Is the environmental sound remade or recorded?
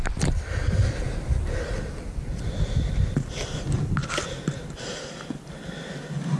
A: recorded